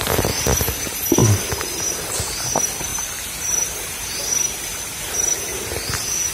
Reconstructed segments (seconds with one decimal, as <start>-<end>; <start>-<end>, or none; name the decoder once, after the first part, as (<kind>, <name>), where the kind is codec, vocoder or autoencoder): none